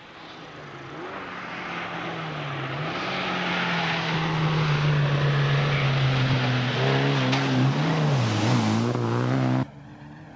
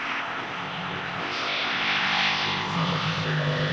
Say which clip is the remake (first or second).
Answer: second